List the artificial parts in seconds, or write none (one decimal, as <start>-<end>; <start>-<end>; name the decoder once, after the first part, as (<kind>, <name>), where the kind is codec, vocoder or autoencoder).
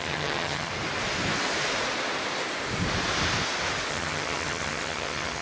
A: 0.0-0.7 (vocoder, HiFi-GAN); 3.9-5.4